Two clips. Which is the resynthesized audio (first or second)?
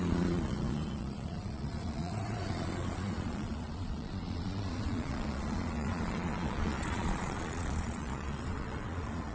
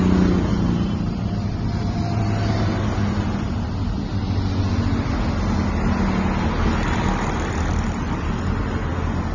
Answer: first